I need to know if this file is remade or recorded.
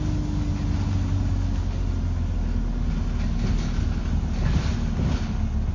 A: recorded